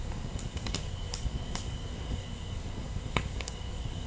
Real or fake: fake